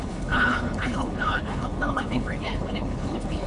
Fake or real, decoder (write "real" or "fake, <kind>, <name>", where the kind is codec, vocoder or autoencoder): fake, codec, HILCodec